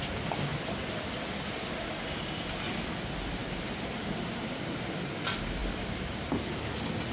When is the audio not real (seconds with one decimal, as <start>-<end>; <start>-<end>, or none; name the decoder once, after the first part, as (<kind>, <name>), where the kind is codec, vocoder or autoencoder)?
3.4-4.5 (vocoder, BigVGAN v2)